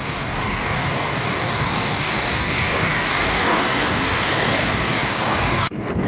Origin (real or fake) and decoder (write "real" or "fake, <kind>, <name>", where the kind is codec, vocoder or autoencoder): fake, codec, DAC